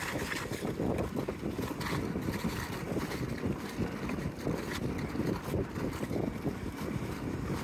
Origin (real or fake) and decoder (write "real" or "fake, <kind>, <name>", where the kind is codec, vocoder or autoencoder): real